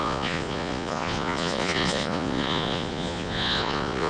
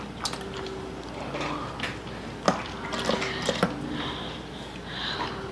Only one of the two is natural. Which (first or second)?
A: second